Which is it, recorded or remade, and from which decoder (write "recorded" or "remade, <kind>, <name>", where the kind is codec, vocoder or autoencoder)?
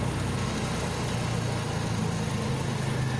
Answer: recorded